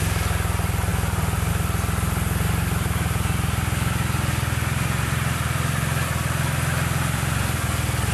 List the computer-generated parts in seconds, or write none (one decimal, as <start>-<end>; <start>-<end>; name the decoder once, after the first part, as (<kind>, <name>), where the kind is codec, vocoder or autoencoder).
none